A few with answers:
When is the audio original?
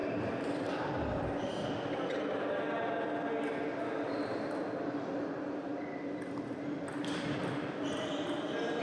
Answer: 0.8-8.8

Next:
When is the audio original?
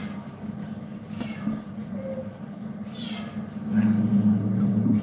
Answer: 0.0-5.0